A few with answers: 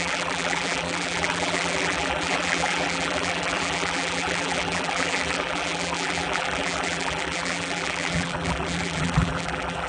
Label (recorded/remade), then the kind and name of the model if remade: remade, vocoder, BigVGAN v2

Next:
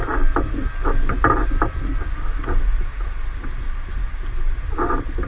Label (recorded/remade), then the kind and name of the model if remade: recorded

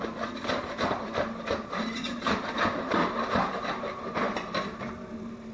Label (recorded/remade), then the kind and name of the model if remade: remade, vocoder, BigVGAN v2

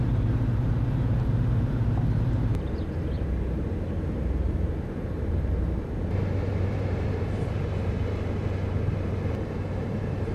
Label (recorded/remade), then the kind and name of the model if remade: remade, vocoder, BigVGAN v2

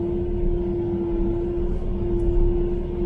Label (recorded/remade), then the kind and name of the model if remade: recorded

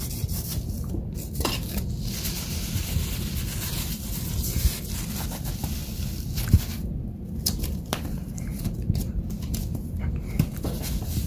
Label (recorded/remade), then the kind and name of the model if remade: remade, vocoder, BigVGAN v2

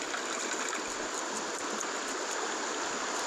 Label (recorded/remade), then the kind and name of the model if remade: recorded